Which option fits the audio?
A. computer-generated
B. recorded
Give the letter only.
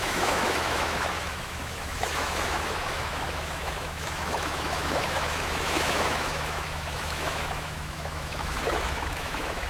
A